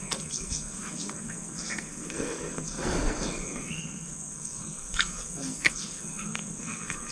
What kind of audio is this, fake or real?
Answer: fake